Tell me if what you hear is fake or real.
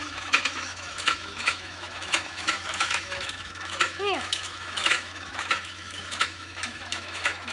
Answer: fake